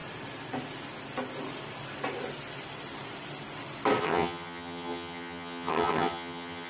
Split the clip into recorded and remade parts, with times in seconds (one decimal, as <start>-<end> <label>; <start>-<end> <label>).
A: 0.0-4.0 recorded; 4.0-6.7 remade

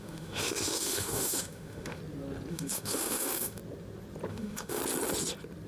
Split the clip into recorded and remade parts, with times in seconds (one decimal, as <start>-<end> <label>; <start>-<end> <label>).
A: 0.0-2.0 remade; 2.0-2.5 recorded; 2.5-3.6 remade; 3.6-4.3 recorded; 4.3-4.8 remade; 4.8-5.7 recorded

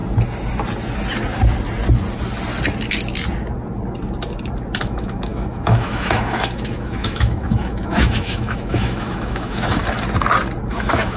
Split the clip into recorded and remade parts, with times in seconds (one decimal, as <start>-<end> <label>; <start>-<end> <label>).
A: 0.0-4.8 recorded; 4.8-9.8 remade; 9.8-10.7 recorded; 10.7-11.2 remade